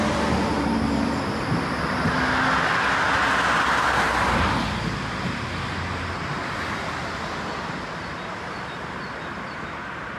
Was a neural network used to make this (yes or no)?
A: no